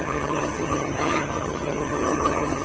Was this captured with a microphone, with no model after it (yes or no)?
no